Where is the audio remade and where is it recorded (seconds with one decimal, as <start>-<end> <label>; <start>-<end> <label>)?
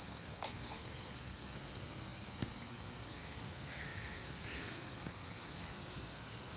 0.0-6.6 remade